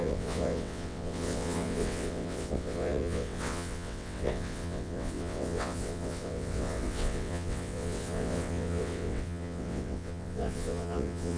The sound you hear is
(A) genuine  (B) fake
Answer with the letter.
B